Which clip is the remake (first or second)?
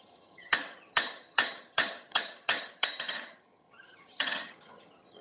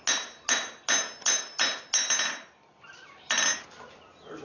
first